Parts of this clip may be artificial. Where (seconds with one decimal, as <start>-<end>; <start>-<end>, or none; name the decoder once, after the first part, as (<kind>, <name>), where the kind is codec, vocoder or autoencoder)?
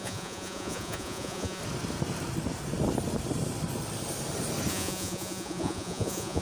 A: 0.0-1.6 (vocoder, Vocos); 4.7-6.4